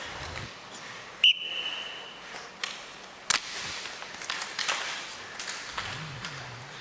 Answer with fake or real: real